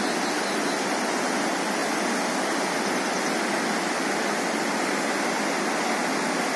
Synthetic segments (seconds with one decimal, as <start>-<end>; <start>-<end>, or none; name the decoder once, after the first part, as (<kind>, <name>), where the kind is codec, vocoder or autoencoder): none